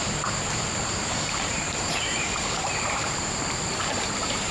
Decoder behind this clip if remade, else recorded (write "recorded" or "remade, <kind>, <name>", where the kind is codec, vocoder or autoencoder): remade, vocoder, BigVGAN v2